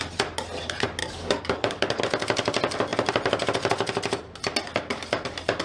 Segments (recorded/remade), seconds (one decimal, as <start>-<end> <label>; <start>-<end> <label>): 0.0-1.0 recorded; 1.0-2.0 remade; 2.0-5.6 recorded